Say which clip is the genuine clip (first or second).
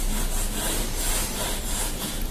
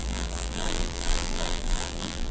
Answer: first